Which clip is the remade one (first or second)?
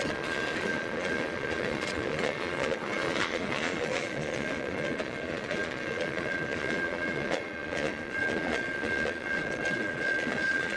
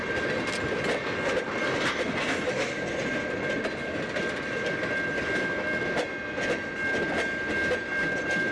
first